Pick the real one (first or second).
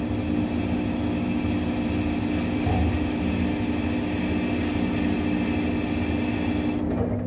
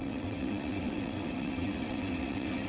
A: first